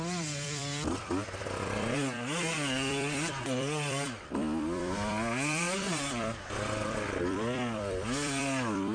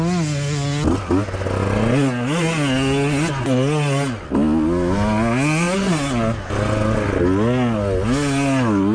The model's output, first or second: first